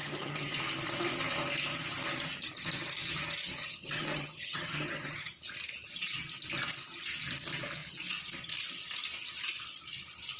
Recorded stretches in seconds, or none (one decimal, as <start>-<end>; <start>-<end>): 0.5-3.6; 5.3-10.4